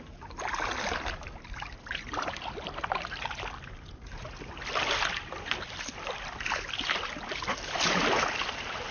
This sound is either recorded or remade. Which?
recorded